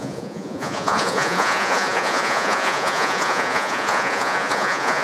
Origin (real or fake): fake